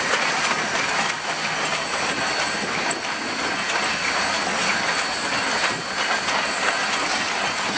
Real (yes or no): yes